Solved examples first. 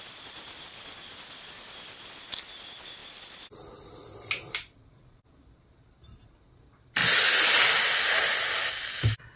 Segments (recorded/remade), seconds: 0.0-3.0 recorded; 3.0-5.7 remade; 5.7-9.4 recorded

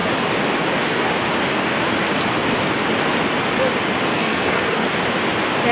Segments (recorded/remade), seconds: 0.0-4.1 recorded; 4.1-4.9 remade; 4.9-5.7 recorded

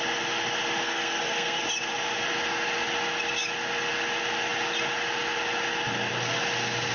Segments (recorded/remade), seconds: 0.0-0.8 recorded; 0.8-1.6 remade; 1.6-6.9 recorded

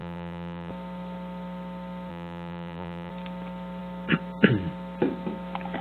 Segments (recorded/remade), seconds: 0.0-0.7 remade; 0.7-2.1 recorded; 2.1-3.1 remade; 3.1-5.8 recorded

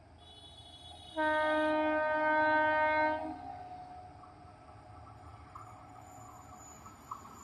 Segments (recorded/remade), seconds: 0.0-7.4 recorded